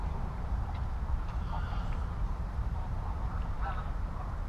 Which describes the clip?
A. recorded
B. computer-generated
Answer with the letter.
B